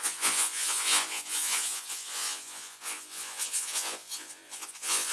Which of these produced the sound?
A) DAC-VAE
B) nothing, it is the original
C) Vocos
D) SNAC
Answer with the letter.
C